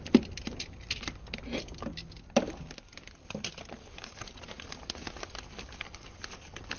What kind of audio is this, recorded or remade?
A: recorded